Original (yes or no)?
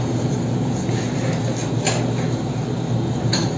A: yes